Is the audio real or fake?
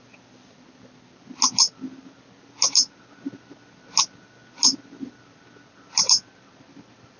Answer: real